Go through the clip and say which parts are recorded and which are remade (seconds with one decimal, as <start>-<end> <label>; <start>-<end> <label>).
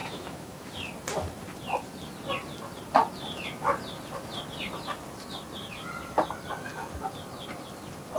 0.0-0.7 remade; 0.7-8.2 recorded